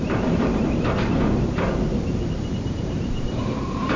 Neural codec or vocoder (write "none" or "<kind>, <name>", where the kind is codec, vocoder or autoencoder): vocoder, BigVGAN v2